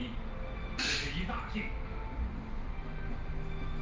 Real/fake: real